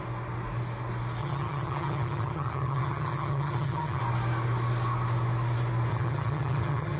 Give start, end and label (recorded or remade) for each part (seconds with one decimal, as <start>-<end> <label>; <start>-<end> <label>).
0.0-1.2 recorded; 1.2-4.0 remade; 4.0-5.9 recorded; 5.9-7.0 remade